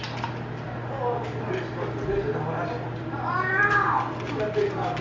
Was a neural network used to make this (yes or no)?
no